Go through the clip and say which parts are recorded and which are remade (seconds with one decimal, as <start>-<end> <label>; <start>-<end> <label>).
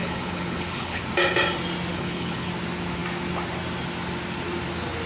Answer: 0.0-1.0 remade; 1.0-1.9 recorded; 1.9-2.5 remade; 2.5-5.1 recorded